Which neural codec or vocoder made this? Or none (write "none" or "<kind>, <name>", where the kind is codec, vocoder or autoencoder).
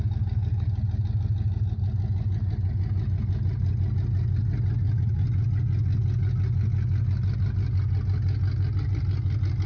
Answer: none